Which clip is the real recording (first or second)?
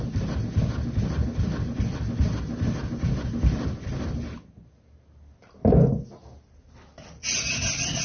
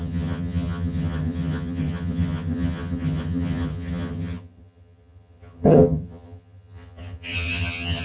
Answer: first